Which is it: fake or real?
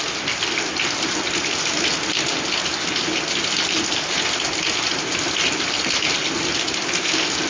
real